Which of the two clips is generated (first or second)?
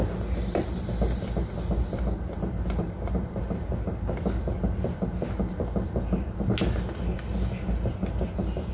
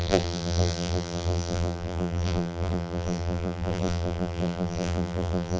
second